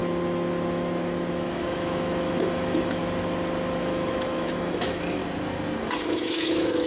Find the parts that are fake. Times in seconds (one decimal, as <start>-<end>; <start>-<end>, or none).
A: 1.3-3.0; 3.8-5.2; 5.9-6.9